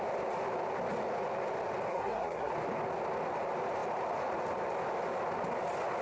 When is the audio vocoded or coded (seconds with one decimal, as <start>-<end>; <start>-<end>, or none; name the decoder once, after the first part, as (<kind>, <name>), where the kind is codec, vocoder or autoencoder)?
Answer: 1.9-2.5 (codec, SNAC)